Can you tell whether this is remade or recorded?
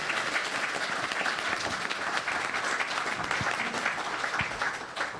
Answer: recorded